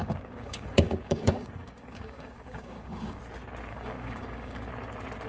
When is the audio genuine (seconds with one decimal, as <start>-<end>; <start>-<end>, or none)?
3.2-3.7; 4.7-5.3